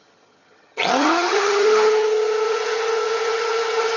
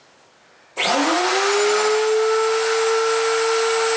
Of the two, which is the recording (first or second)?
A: second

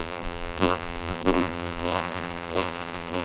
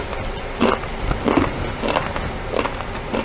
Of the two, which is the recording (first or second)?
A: second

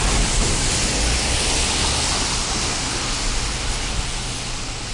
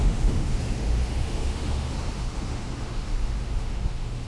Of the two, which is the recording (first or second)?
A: first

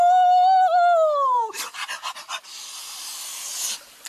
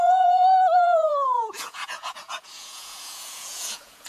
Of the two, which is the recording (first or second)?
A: first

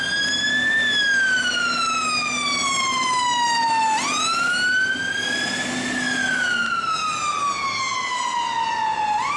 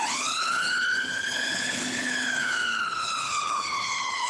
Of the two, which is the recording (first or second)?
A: first